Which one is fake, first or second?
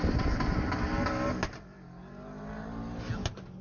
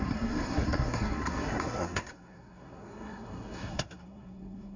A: second